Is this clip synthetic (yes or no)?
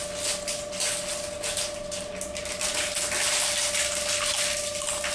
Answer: no